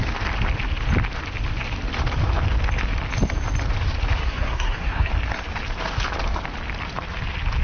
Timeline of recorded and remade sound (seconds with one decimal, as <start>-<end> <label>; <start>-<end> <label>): 0.0-4.2 recorded; 4.2-5.1 remade; 5.1-7.6 recorded